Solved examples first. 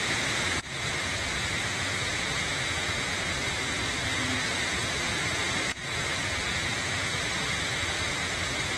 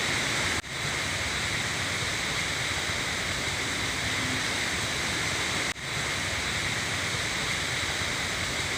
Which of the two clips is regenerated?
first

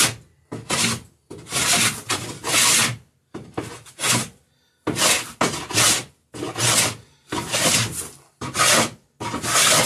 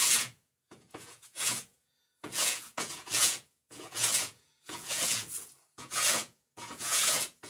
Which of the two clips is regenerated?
second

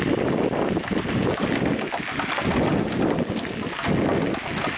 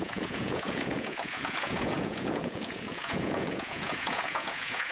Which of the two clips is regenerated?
second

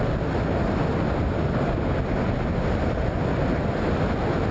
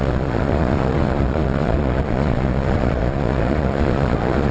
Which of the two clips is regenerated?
second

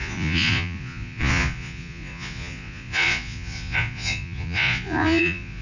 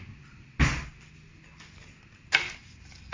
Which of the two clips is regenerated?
first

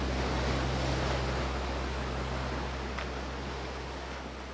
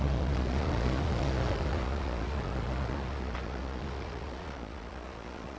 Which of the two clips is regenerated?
second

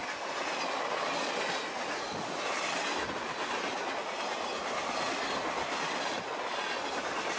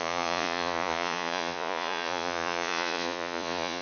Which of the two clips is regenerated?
second